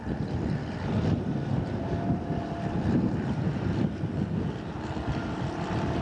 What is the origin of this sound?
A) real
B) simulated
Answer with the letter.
B